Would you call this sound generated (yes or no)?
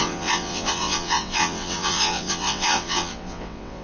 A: yes